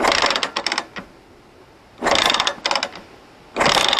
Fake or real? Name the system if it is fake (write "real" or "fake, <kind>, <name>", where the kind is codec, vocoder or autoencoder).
real